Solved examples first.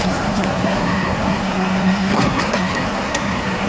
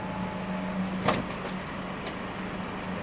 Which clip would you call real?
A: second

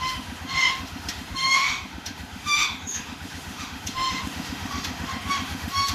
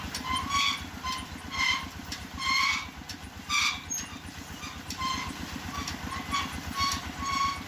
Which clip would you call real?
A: second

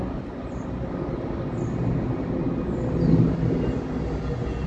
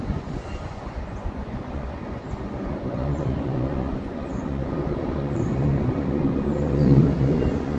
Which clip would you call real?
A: first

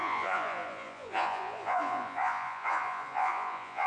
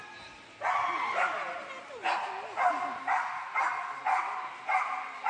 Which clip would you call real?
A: second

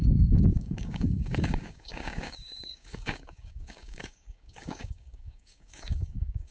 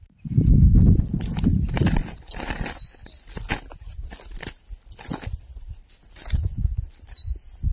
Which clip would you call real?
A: second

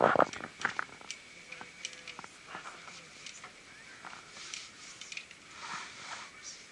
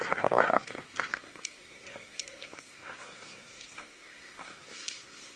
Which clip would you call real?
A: first